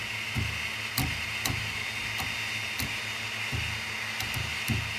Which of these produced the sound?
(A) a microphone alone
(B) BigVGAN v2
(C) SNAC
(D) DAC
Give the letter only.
A